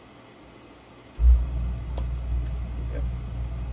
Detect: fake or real real